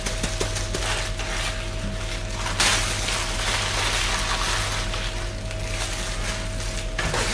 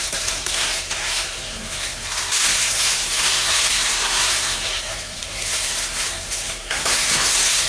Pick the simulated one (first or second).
second